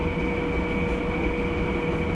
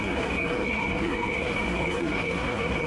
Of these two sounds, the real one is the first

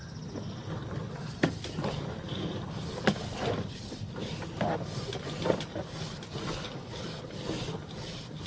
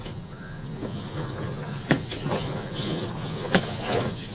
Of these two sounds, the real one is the first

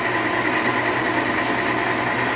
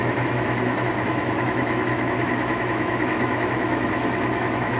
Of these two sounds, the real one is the first